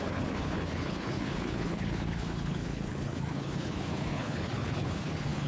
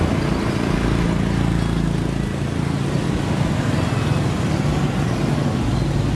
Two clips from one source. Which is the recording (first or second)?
second